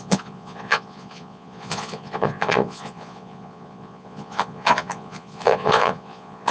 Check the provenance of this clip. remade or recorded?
remade